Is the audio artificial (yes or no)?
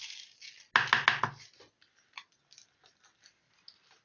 no